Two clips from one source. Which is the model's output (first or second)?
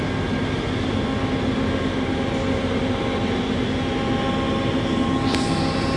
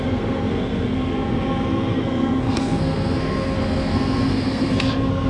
second